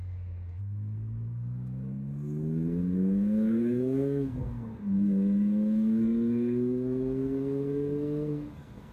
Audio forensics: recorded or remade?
remade